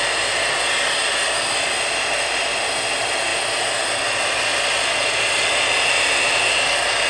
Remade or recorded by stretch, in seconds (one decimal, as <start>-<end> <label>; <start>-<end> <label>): 0.0-7.1 recorded